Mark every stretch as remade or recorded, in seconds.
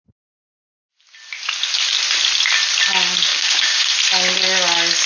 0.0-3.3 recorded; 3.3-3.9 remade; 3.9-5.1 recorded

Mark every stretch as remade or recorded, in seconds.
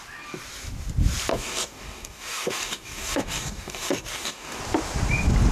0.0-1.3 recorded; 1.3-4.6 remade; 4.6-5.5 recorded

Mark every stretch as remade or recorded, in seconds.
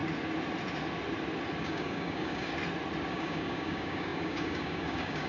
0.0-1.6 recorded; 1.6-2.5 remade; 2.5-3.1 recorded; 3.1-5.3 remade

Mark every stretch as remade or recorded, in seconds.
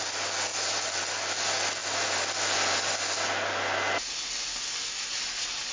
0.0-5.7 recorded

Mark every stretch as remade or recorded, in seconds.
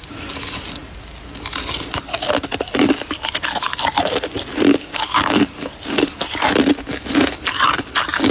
0.0-4.7 recorded; 4.7-5.4 remade; 5.4-8.3 recorded